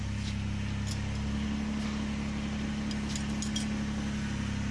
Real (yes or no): yes